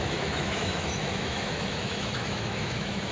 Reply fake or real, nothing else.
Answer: fake